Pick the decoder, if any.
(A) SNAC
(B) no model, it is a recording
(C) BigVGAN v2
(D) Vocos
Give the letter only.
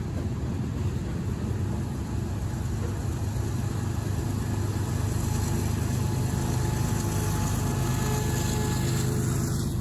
B